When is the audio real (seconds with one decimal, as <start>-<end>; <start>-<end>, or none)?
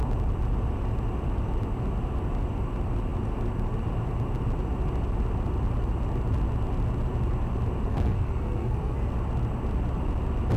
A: 0.0-7.9; 9.1-10.6